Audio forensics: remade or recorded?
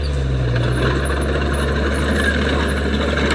recorded